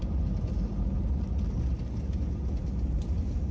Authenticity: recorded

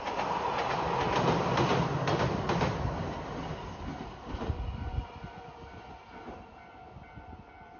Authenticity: recorded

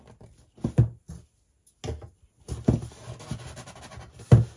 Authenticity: recorded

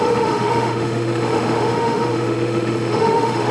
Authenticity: remade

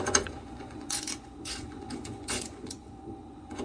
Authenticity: remade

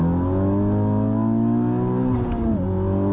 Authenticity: recorded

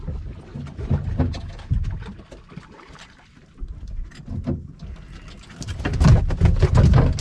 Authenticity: recorded